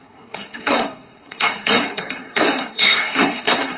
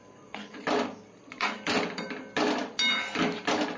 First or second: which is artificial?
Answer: first